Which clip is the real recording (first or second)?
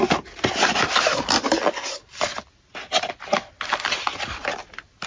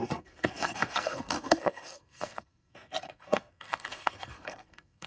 first